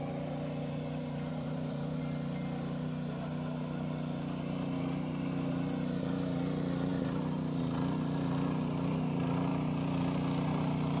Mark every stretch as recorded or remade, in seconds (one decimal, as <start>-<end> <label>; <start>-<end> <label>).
0.0-1.3 recorded; 1.3-2.0 remade; 2.0-11.0 recorded